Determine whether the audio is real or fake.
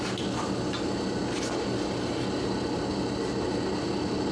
real